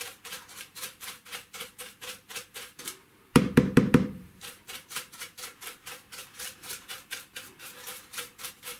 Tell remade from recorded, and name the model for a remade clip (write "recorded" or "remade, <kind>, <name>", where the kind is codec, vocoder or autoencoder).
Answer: remade, vocoder, BigVGAN v2